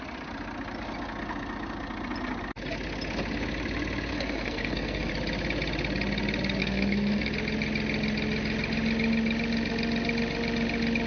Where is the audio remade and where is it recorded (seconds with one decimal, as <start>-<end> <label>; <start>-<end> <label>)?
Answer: 0.0-4.1 recorded; 4.1-5.1 remade; 5.1-6.6 recorded; 6.6-7.3 remade; 7.3-11.1 recorded